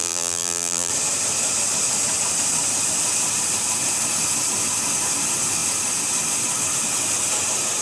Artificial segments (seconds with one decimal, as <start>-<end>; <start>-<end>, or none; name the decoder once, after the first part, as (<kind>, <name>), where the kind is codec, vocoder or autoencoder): 0.0-0.9 (vocoder, BigVGAN v2)